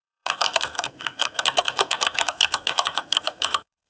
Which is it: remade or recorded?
remade